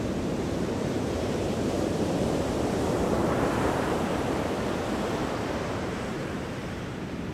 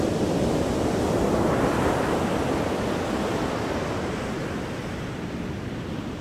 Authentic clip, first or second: second